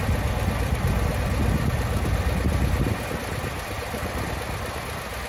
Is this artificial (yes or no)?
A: no